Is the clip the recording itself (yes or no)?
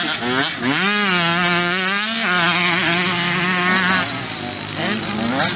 yes